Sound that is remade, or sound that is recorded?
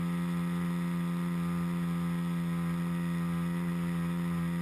recorded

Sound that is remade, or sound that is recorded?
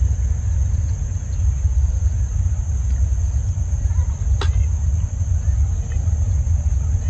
recorded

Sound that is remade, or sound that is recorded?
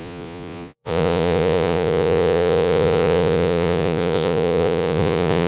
remade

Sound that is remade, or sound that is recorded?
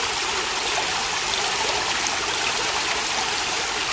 recorded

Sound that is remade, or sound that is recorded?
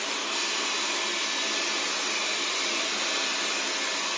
recorded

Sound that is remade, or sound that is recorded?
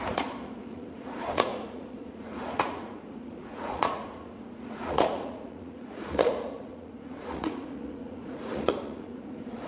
remade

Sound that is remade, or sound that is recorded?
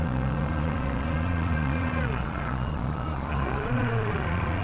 remade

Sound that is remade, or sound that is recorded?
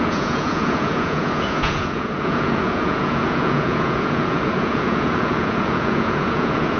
remade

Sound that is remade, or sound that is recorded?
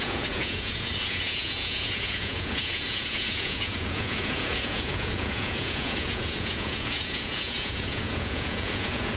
remade